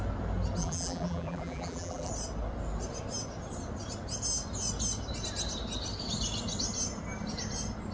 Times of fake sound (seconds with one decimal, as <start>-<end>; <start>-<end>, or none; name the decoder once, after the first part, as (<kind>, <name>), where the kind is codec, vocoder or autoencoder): 0.6-2.1 (vocoder, BigVGAN v2)